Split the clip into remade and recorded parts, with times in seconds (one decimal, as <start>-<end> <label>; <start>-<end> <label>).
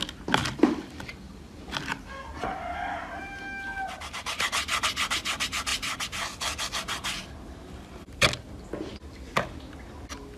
0.0-10.4 recorded